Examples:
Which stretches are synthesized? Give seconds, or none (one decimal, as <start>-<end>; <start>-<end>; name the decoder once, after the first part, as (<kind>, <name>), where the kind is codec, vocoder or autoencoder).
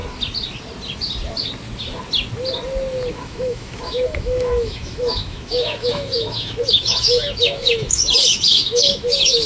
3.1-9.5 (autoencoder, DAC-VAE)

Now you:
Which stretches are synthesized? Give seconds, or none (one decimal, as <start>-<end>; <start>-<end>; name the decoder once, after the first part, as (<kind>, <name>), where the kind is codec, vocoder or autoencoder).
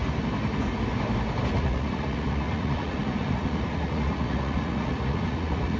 1.5-5.8 (vocoder, Vocos)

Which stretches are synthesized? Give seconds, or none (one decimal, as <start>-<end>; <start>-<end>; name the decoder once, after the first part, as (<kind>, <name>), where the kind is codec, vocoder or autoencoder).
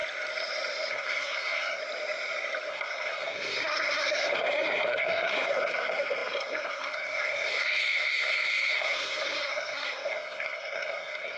0.9-1.8 (codec, SNAC); 2.7-11.4